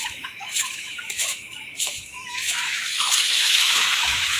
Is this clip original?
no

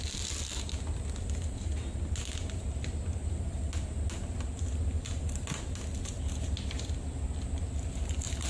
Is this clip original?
yes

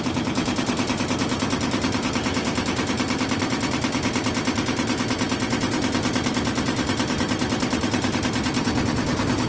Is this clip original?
yes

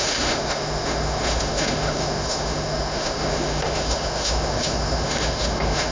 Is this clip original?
no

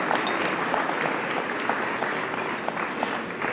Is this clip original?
yes